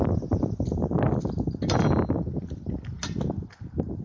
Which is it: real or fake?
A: real